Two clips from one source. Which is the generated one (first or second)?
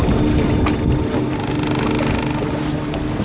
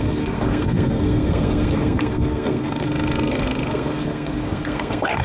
second